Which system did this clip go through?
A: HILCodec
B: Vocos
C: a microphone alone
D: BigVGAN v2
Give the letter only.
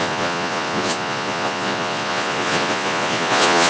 B